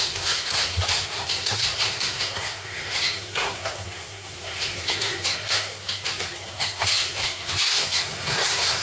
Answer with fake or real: fake